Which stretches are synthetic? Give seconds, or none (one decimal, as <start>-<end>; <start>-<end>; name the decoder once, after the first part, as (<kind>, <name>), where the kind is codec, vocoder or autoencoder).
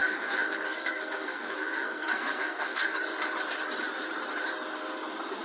0.0-3.0 (codec, SNAC)